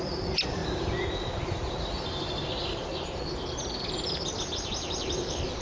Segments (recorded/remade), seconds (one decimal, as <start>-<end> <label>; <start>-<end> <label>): 0.0-5.6 recorded